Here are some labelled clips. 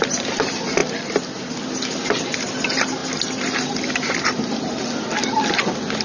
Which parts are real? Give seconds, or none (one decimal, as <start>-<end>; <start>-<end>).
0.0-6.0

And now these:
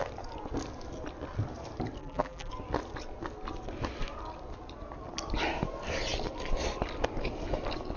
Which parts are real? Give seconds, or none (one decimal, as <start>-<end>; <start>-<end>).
0.0-2.0; 2.5-8.0

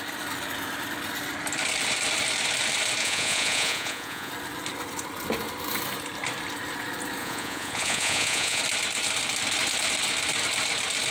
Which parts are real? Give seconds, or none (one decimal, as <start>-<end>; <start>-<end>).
0.0-3.0; 4.3-7.2; 8.6-11.1

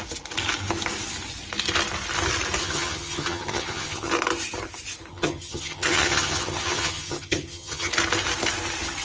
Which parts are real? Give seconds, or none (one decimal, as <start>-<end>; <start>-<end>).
0.0-2.6; 4.1-5.1; 7.9-9.0

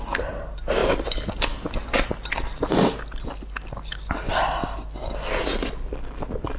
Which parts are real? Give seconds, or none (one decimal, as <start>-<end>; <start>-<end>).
0.0-6.6

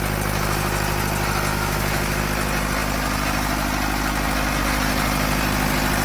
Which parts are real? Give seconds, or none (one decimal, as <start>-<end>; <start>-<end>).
0.0-1.5; 2.2-6.0

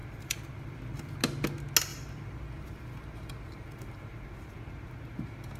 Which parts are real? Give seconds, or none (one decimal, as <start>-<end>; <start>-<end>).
1.1-1.9